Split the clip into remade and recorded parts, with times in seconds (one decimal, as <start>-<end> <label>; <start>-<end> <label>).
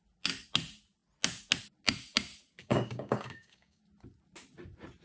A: 0.0-2.6 recorded; 2.6-3.8 remade; 3.8-5.0 recorded